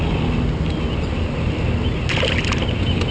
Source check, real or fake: real